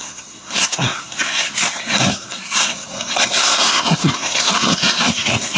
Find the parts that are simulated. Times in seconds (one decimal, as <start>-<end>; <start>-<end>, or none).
0.0-5.6